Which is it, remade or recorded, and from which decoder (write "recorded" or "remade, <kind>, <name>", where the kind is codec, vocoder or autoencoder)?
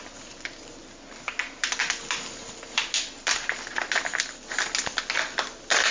recorded